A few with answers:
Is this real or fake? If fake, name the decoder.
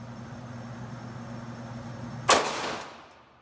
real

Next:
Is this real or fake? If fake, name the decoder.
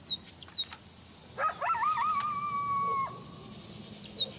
real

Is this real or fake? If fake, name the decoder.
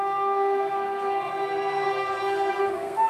fake, codec, SNAC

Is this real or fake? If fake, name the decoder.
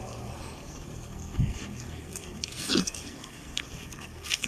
fake, codec, SNAC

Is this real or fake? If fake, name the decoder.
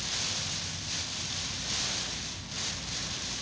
real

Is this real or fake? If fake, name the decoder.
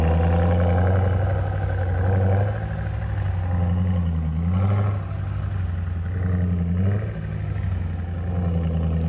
real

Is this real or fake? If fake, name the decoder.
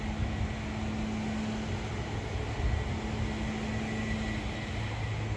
real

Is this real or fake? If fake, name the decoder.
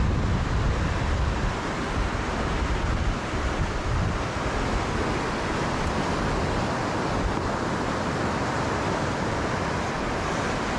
real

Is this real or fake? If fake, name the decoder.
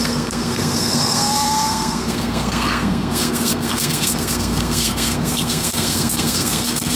fake, codec, SNAC